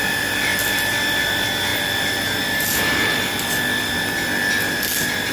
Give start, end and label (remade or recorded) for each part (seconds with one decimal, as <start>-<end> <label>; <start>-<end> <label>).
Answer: 0.0-5.3 recorded